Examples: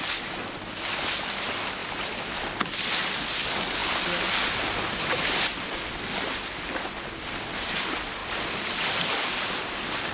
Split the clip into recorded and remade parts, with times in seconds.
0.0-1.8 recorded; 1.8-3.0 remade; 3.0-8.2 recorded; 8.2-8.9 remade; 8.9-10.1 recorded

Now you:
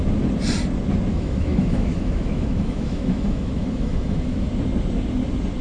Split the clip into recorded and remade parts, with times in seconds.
0.0-1.1 recorded; 1.1-4.5 remade; 4.5-5.6 recorded